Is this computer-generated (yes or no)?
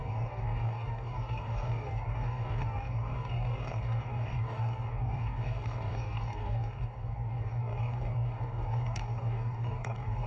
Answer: yes